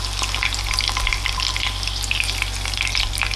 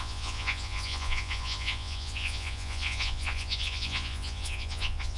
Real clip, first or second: first